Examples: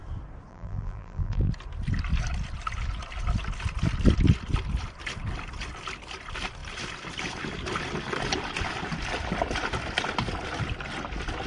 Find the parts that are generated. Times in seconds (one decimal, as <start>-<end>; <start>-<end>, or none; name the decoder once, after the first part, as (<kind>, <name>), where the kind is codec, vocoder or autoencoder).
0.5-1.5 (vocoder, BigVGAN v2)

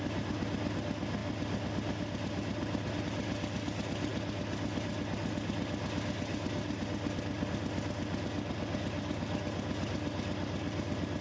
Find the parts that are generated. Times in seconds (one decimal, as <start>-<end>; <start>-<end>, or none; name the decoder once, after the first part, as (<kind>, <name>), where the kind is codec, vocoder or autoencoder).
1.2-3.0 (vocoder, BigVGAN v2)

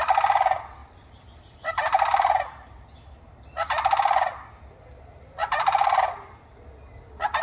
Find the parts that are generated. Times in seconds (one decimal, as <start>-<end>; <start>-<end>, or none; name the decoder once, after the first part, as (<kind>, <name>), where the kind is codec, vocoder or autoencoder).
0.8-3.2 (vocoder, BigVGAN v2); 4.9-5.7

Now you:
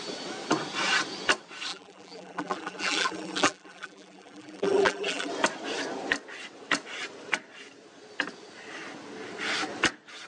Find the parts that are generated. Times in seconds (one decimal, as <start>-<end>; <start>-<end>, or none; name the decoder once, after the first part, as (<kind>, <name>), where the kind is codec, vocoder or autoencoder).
1.7-5.3 (vocoder, BigVGAN v2)

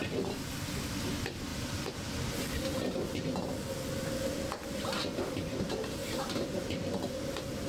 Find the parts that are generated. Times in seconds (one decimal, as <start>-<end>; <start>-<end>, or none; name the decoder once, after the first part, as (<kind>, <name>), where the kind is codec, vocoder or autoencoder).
1.5-2.4 (vocoder, BigVGAN v2); 6.0-6.6

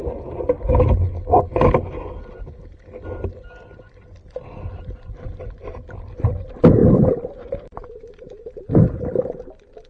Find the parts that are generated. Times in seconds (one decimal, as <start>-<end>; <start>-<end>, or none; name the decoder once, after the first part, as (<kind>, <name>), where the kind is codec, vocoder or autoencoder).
6.8-9.5 (vocoder, BigVGAN v2)

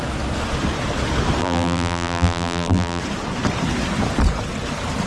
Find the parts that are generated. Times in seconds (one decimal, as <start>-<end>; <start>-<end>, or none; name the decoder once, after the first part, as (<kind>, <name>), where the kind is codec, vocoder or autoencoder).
1.4-3.0 (vocoder, BigVGAN v2)

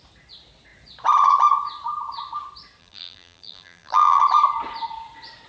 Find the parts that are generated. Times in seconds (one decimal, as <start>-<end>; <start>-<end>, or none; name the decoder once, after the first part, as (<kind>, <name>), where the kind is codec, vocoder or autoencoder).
2.8-4.2 (vocoder, BigVGAN v2)